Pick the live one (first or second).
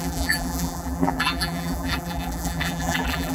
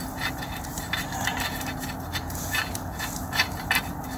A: second